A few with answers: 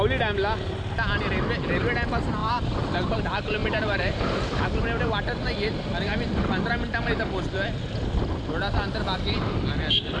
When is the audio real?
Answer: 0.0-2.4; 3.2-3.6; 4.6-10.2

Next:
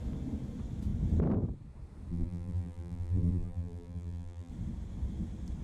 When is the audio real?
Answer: 0.0-2.1; 4.5-5.6

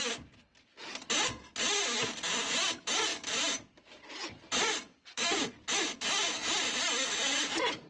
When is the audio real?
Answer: 0.0-3.1